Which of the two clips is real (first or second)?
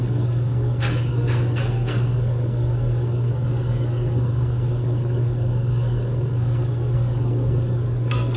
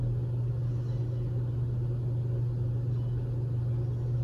second